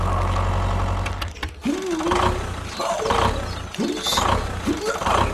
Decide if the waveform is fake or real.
real